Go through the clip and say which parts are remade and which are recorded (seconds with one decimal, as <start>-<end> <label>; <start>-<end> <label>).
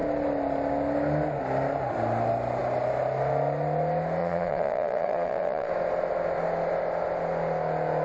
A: 0.0-4.2 recorded; 4.2-5.7 remade; 5.7-8.0 recorded